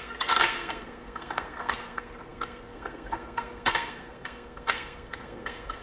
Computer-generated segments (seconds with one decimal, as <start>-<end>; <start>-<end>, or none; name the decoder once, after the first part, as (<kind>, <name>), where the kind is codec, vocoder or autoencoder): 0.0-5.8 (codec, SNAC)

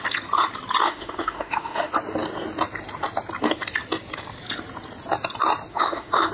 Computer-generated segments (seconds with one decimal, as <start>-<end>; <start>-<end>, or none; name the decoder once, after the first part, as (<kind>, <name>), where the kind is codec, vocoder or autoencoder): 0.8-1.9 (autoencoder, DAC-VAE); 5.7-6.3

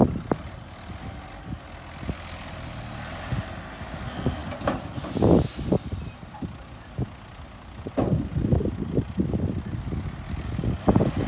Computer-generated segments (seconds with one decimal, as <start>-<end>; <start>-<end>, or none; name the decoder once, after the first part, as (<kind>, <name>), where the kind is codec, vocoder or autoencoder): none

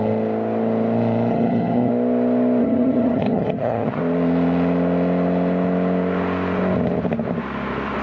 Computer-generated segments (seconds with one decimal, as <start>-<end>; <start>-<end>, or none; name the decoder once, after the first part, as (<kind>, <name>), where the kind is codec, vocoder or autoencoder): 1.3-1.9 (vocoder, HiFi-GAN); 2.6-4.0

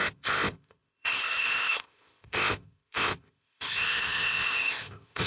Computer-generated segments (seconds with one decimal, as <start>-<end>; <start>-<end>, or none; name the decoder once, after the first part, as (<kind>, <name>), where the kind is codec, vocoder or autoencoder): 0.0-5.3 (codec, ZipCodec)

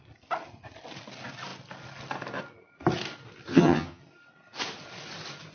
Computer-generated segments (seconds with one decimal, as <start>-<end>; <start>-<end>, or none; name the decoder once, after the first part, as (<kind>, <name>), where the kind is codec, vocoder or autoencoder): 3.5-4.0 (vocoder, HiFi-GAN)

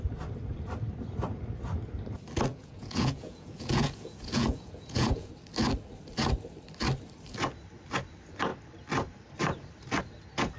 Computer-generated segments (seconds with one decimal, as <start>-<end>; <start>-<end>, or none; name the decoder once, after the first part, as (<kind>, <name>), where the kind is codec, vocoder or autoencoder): 2.5-5.3 (vocoder, Vocos)

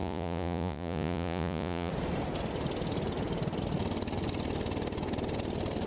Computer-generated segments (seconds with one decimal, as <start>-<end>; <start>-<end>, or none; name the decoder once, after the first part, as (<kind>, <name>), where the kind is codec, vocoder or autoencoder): 0.0-1.9 (vocoder, Vocos)